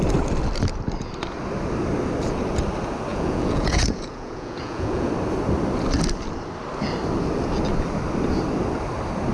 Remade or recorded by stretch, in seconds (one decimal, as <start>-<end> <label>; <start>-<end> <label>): 0.0-3.1 recorded; 3.1-5.1 remade; 5.1-9.3 recorded